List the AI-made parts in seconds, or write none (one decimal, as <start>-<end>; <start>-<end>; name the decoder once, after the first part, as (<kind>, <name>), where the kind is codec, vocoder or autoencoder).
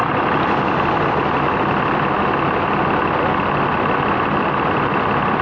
none